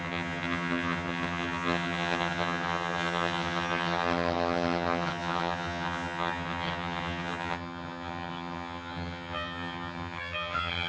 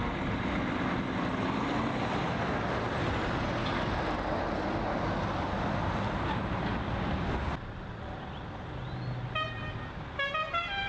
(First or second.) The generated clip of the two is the first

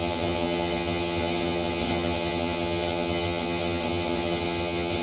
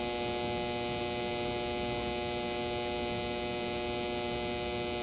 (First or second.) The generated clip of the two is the first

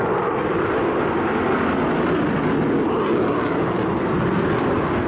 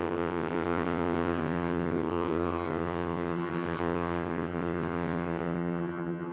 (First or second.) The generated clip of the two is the second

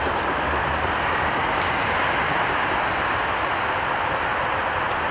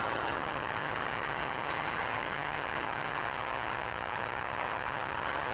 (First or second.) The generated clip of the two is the second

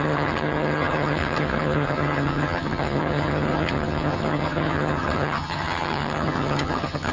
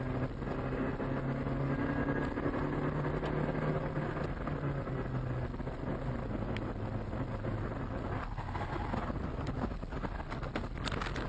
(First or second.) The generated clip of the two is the first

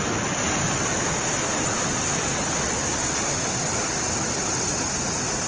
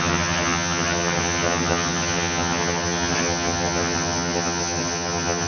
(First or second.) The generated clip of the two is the second